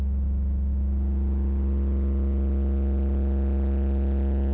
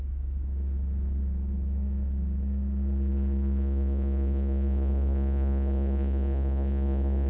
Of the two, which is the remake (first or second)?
second